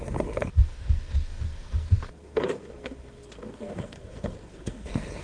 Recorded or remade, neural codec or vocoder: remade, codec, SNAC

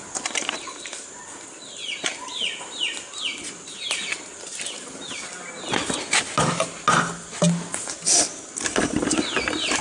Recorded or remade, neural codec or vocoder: recorded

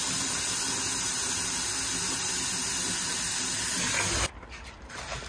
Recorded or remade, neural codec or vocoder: recorded